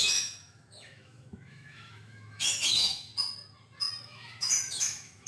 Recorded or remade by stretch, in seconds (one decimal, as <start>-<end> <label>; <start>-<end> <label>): 0.0-3.1 remade; 3.1-4.0 recorded; 4.0-5.3 remade